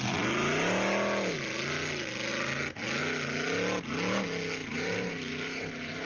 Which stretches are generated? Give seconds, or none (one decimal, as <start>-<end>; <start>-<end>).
4.6-6.1